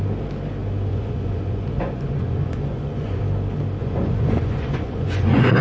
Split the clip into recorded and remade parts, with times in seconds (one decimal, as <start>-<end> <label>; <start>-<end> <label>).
0.0-0.9 recorded; 0.9-3.2 remade; 3.2-3.8 recorded; 3.8-5.6 remade